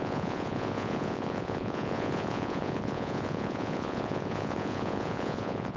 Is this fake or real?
fake